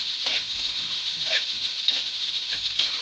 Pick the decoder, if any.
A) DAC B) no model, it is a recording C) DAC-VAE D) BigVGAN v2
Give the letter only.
C